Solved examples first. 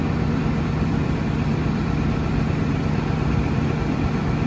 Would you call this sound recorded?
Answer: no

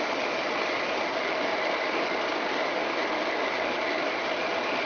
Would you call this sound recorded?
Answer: yes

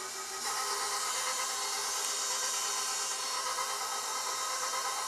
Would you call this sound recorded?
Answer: yes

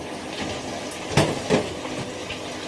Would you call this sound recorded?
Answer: yes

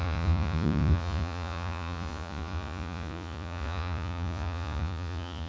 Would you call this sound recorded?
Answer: no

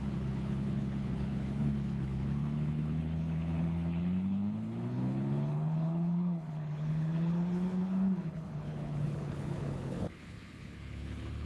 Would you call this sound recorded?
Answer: no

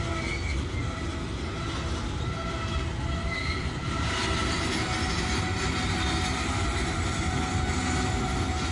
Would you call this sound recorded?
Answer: yes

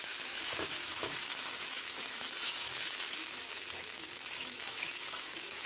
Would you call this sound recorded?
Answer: no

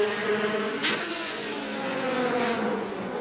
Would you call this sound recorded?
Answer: no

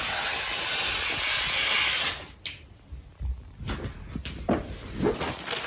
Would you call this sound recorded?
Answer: yes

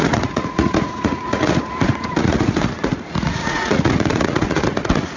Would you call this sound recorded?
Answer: no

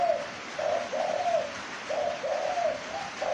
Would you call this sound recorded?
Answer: no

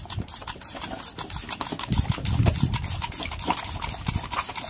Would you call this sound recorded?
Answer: yes